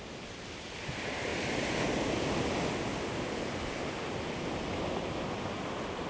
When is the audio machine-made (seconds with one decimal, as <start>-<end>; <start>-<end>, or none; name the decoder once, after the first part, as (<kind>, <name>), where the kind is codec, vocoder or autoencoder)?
none